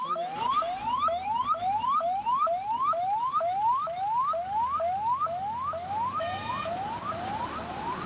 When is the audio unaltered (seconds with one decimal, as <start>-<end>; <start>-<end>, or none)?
0.0-3.3; 6.5-8.1